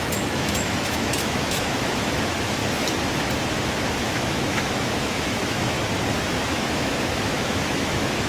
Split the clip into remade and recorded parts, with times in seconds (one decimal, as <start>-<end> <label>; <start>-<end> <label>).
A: 0.0-2.6 remade; 2.6-3.9 recorded; 3.9-5.8 remade; 5.8-6.3 recorded; 6.3-8.3 remade